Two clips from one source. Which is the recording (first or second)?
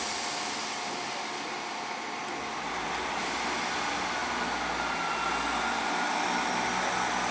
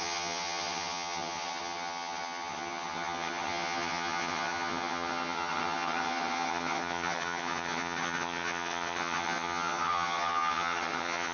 first